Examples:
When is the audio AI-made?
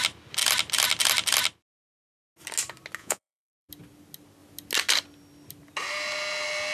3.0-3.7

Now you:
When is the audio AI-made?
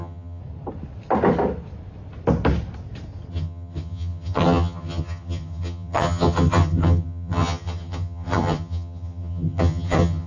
0.0-0.4; 3.3-10.3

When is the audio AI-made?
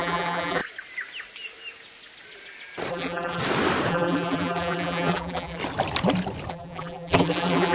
0.0-0.6; 2.9-3.4; 3.9-5.6; 6.5-7.7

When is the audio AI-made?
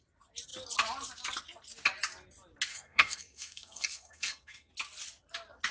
2.7-4.7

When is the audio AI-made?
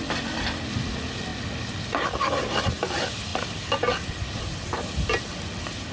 none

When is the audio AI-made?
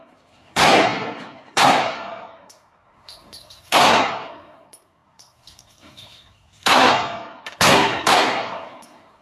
0.0-9.2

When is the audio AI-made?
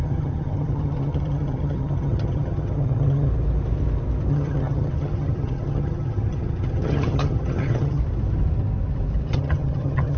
0.0-3.3; 4.3-8.0; 9.3-10.2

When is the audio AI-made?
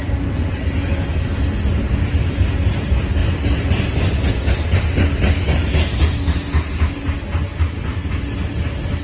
none